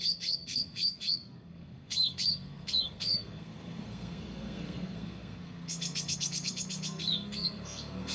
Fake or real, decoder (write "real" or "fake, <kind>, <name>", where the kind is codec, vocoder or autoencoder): fake, codec, SNAC